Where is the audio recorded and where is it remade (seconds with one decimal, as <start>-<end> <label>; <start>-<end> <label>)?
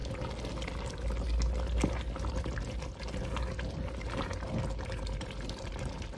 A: 0.0-6.2 recorded